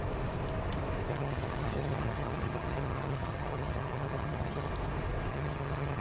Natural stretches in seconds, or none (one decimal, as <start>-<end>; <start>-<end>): 0.0-1.1; 4.7-5.3